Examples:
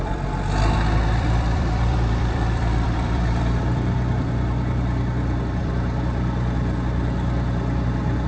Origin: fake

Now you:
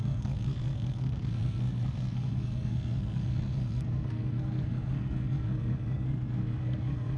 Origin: fake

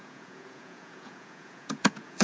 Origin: fake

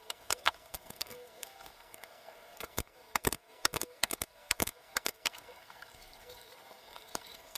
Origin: fake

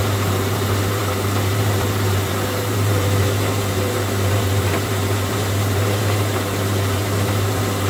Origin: fake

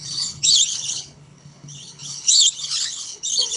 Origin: fake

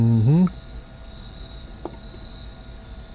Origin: real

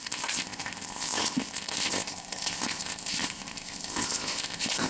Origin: fake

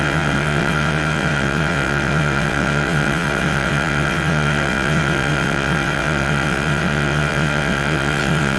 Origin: fake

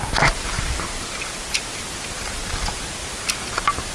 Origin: real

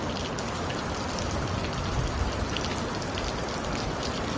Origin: real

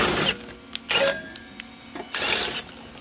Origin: real